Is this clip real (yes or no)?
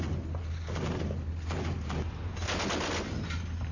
yes